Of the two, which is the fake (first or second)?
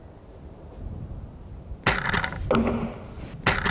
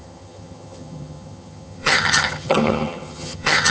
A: second